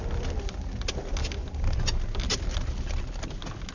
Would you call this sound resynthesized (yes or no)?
no